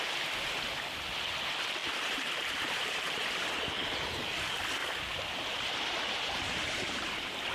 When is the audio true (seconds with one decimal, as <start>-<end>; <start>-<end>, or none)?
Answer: 0.0-1.8; 3.3-4.8